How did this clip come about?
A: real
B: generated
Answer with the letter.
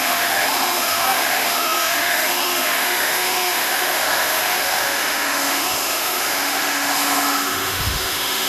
B